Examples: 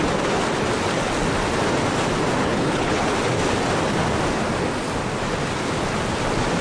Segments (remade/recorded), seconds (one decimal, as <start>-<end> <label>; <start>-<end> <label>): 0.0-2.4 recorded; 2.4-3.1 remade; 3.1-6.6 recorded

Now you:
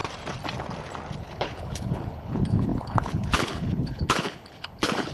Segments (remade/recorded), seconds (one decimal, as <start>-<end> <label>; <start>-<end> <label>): 0.0-1.2 recorded; 1.2-5.1 remade

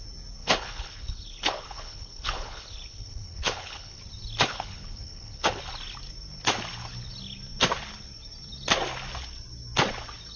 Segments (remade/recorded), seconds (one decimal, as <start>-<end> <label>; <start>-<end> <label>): 0.0-0.4 recorded; 0.4-4.0 remade; 4.0-4.5 recorded; 4.5-5.6 remade; 5.6-10.4 recorded

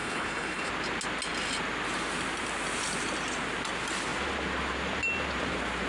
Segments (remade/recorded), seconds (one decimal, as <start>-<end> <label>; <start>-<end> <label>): 0.0-0.7 remade; 0.7-5.9 recorded

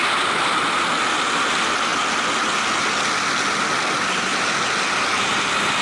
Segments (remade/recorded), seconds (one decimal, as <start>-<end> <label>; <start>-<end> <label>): 0.0-5.8 recorded

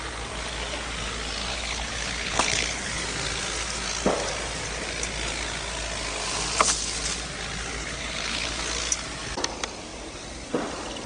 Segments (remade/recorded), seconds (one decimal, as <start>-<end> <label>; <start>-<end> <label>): 0.0-1.5 recorded; 1.5-3.0 remade; 3.0-7.8 recorded; 7.8-8.6 remade; 8.6-11.1 recorded

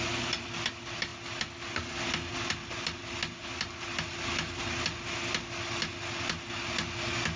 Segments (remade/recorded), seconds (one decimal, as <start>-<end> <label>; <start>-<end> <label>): 0.0-7.4 recorded